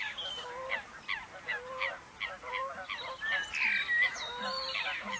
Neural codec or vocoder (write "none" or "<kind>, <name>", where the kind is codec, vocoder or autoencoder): none